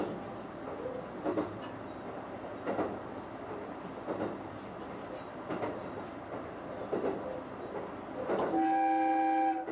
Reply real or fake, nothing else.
real